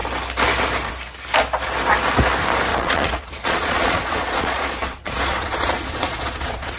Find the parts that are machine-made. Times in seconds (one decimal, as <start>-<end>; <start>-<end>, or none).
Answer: 2.7-6.8